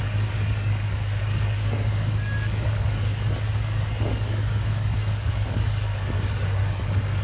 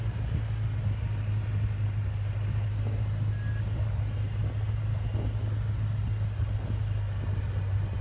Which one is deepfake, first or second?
first